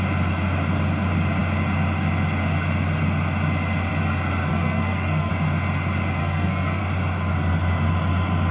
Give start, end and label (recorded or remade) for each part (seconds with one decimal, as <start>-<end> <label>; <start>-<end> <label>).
0.0-4.5 recorded; 4.5-5.3 remade; 5.3-6.2 recorded; 6.2-6.8 remade; 6.8-8.5 recorded